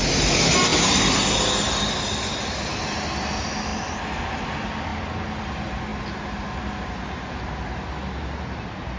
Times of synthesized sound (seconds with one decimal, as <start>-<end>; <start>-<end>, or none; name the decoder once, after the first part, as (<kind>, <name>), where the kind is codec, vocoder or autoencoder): none